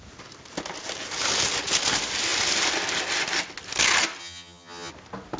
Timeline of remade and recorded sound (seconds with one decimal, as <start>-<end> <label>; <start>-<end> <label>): 0.0-4.2 recorded; 4.2-4.9 remade; 4.9-5.4 recorded